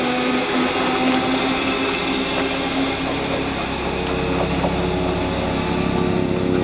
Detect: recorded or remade recorded